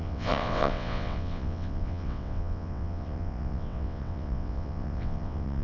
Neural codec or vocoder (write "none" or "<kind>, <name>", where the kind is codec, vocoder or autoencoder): vocoder, WaveNeXt